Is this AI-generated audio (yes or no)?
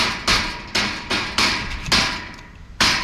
no